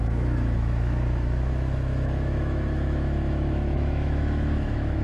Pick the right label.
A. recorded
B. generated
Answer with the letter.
B